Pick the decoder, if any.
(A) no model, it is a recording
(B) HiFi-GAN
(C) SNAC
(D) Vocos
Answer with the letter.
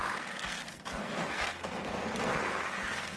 C